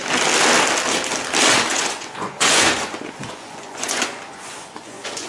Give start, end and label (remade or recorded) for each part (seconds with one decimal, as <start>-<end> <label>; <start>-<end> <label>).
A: 0.0-1.7 recorded; 1.7-5.3 remade